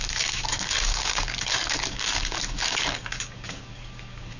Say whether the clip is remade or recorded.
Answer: remade